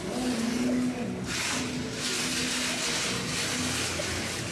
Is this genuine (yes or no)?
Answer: yes